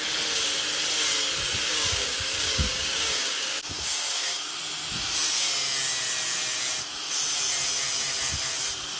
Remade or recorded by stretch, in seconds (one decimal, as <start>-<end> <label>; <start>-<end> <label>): 0.0-1.6 recorded; 1.6-4.5 remade; 4.5-9.0 recorded

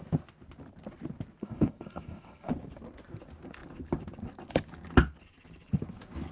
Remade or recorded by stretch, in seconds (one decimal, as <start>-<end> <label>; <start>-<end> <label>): 0.0-1.4 recorded; 1.4-2.5 remade; 2.5-6.3 recorded